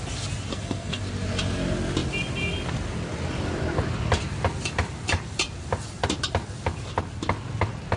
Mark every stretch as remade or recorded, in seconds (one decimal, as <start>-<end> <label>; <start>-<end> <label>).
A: 0.0-0.5 recorded; 0.5-1.0 remade; 1.0-8.0 recorded